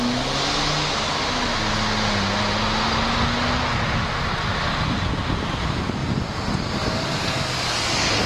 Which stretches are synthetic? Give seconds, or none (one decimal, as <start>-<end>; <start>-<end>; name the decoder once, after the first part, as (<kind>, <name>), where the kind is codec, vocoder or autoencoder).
none